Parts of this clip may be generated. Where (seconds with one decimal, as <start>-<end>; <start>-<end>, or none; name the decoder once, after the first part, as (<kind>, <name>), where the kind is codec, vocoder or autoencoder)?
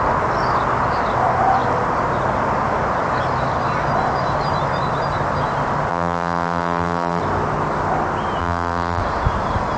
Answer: 5.9-7.2 (vocoder, BigVGAN v2); 8.4-9.0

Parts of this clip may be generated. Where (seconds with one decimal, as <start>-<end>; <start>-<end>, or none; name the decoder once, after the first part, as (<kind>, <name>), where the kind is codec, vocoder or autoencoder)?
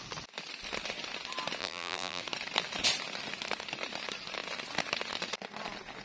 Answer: 1.6-2.2 (vocoder, BigVGAN v2)